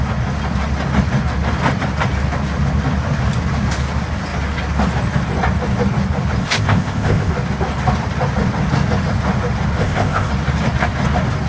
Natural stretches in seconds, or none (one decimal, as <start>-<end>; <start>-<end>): 0.0-6.4; 7.3-9.8; 10.3-11.5